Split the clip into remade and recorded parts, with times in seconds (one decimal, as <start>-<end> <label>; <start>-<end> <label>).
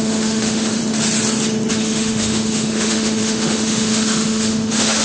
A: 0.0-0.8 remade; 0.8-1.7 recorded; 1.7-5.0 remade